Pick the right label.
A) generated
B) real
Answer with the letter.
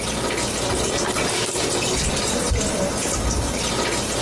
B